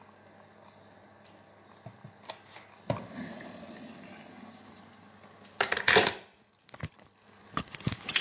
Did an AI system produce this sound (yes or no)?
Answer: no